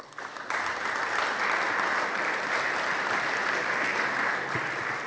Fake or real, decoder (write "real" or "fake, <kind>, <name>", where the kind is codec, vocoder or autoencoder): real